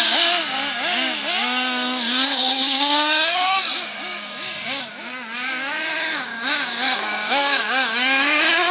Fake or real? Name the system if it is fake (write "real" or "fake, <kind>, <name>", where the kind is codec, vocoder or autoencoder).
fake, codec, DAC